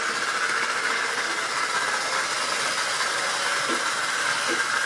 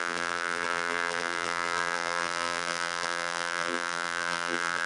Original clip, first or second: first